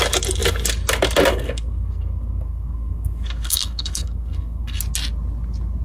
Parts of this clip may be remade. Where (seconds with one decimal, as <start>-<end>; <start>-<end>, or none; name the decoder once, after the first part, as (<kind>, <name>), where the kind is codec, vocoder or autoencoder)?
1.3-4.8 (codec, SNAC)